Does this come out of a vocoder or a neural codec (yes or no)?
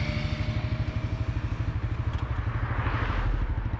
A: no